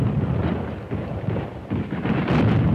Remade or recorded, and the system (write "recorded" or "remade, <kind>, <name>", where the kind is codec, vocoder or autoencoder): recorded